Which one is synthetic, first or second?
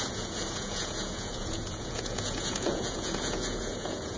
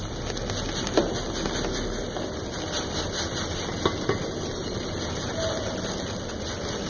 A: first